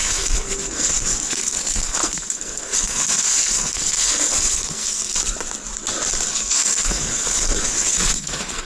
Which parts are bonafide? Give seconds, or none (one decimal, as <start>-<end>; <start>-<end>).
5.2-6.3